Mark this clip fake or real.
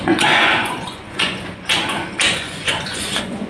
fake